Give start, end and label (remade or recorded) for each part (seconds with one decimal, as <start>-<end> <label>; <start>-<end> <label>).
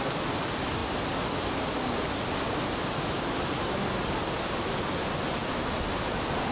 0.0-6.5 recorded